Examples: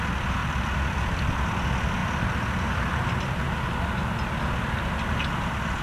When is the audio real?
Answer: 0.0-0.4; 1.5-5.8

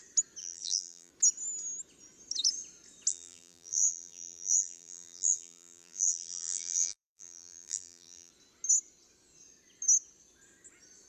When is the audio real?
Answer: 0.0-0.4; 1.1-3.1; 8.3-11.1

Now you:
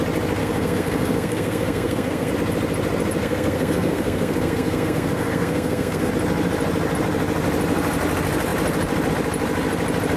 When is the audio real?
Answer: 0.0-0.4; 2.3-3.2; 6.1-10.2